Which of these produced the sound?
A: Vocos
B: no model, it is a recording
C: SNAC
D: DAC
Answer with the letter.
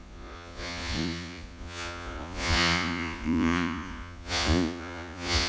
A